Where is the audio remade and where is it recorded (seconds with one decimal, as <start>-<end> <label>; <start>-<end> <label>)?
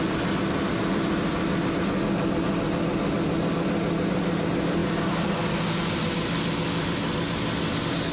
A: 0.0-8.1 recorded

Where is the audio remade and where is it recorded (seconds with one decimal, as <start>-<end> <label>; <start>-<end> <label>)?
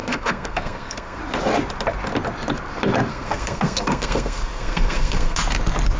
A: 0.0-1.2 remade; 1.2-3.1 recorded; 3.1-5.4 remade; 5.4-6.0 recorded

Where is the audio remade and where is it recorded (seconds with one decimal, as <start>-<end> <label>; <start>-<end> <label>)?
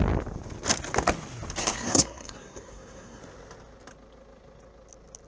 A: 0.0-1.6 recorded; 1.6-3.2 remade; 3.2-5.3 recorded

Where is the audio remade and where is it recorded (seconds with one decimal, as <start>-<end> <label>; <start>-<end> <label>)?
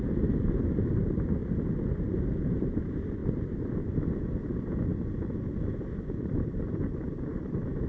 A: 0.0-1.4 remade; 1.4-2.0 recorded; 2.0-3.2 remade; 3.2-4.2 recorded; 4.2-4.9 remade; 4.9-6.2 recorded; 6.2-7.9 remade